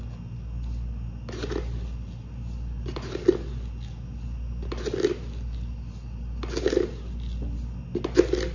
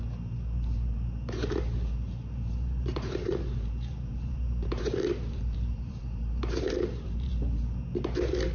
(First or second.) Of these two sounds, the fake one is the second